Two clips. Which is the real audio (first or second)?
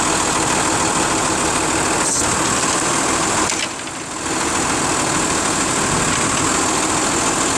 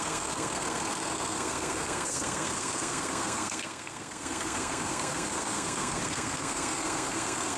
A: first